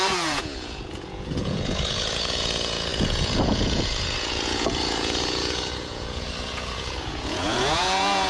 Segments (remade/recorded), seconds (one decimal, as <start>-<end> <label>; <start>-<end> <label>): 0.0-8.3 remade